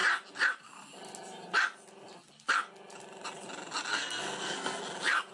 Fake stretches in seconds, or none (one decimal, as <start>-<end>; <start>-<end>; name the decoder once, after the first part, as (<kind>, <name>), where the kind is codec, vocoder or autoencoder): 3.9-4.8 (codec, SNAC)